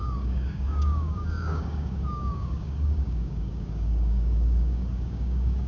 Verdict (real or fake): fake